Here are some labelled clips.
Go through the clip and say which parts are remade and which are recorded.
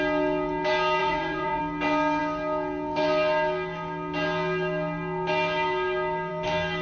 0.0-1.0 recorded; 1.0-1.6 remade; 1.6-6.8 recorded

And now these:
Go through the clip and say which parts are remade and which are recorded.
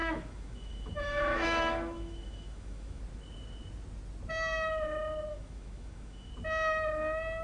0.0-3.0 remade; 3.0-5.3 recorded; 5.3-6.3 remade; 6.3-7.4 recorded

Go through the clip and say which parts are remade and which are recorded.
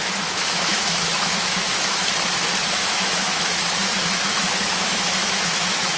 0.0-2.0 remade; 2.0-2.7 recorded; 2.7-6.0 remade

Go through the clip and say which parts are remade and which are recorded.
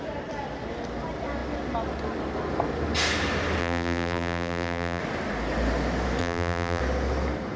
0.0-3.6 recorded; 3.6-5.0 remade; 5.0-6.2 recorded; 6.2-6.8 remade; 6.8-7.6 recorded